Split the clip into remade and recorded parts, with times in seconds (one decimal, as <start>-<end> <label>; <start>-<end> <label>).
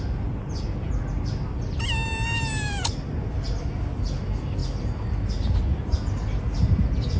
0.0-7.2 recorded